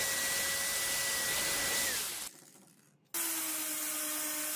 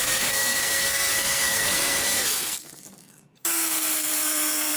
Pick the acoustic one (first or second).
first